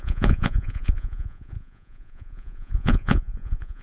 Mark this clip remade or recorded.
remade